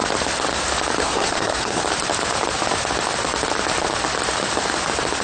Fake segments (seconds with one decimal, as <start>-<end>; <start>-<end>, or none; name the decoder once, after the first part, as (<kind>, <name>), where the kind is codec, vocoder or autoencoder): 1.0-1.8 (codec, SNAC)